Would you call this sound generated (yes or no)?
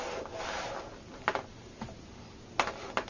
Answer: no